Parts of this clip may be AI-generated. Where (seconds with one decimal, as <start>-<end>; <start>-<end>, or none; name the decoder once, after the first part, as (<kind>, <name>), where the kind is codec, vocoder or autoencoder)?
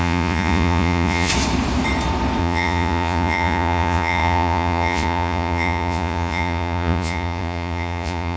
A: 0.0-1.3 (vocoder, Vocos); 2.4-8.4